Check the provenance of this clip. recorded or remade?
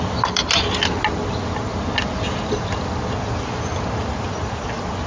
recorded